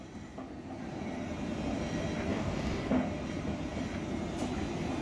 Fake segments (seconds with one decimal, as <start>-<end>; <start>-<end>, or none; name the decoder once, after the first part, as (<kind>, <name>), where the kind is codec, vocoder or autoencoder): 2.3-2.9 (codec, DAC)